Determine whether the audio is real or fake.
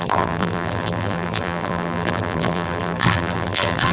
fake